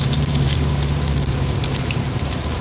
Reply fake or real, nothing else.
fake